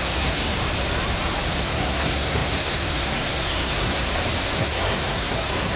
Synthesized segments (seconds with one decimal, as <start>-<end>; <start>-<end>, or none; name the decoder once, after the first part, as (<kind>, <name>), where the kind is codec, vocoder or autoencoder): 0.0-0.5 (codec, SNAC); 1.6-4.1; 4.6-5.8